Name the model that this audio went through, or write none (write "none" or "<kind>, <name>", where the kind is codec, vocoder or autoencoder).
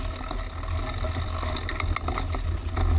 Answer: none